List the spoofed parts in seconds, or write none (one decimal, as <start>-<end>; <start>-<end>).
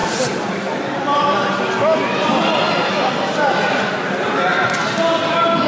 none